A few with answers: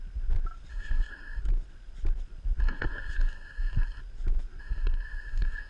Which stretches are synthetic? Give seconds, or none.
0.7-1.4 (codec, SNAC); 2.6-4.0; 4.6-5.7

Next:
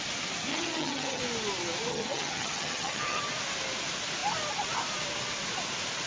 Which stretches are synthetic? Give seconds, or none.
0.5-1.2 (vocoder, HiFi-GAN); 1.9-3.2

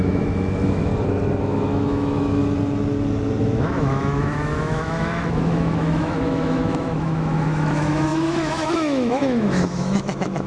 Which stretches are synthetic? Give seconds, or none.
0.0-0.9 (autoencoder, DAC-VAE); 1.4-2.4; 3.4-10.5